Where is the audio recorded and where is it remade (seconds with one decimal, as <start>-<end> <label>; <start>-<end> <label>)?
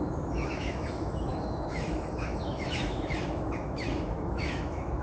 0.0-5.0 remade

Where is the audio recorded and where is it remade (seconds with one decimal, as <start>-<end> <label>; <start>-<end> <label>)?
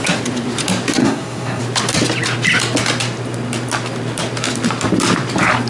0.0-1.0 recorded; 1.0-1.6 remade; 1.6-5.7 recorded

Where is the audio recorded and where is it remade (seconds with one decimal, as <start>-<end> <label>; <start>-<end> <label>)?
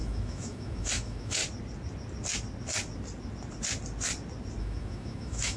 0.0-1.4 remade; 1.4-4.6 recorded; 4.6-5.6 remade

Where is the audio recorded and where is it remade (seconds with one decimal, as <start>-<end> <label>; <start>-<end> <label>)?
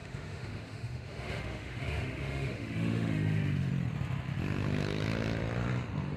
0.0-3.7 remade; 3.7-6.2 recorded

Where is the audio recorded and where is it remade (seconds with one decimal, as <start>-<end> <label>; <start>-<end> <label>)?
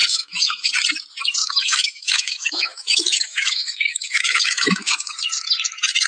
0.0-0.7 remade; 0.7-1.4 recorded; 1.4-5.1 remade; 5.1-6.1 recorded